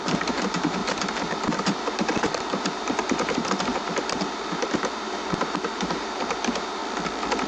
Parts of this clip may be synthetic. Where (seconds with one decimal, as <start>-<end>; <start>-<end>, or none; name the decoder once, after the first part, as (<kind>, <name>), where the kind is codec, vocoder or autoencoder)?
0.0-6.8 (vocoder, BigVGAN v2)